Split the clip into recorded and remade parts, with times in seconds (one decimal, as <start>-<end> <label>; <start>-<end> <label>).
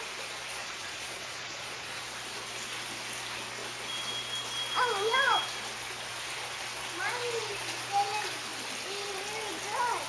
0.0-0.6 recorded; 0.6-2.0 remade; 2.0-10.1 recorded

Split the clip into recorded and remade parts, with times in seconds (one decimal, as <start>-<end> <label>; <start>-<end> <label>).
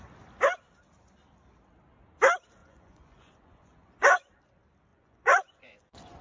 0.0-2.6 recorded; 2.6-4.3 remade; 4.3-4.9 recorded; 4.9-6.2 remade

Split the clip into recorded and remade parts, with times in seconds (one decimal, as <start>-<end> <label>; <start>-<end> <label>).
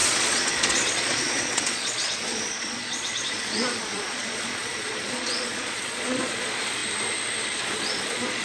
0.0-6.8 remade; 6.8-7.6 recorded; 7.6-8.4 remade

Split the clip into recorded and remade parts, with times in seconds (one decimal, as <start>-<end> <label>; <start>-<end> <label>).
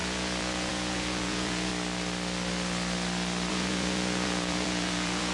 0.0-1.7 remade; 1.7-3.5 recorded; 3.5-5.3 remade